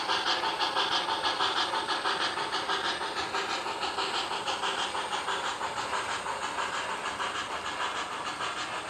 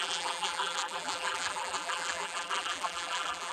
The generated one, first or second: second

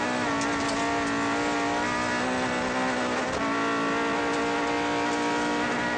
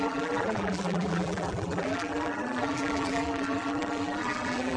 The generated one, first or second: second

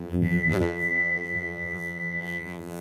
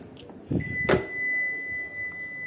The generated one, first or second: first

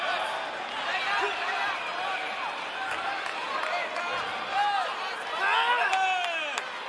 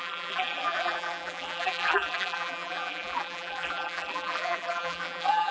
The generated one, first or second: second